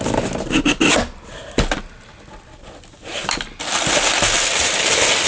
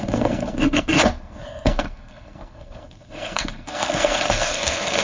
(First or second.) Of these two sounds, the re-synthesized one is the second